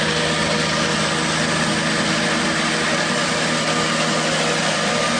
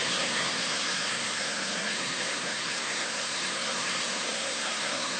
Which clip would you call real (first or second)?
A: first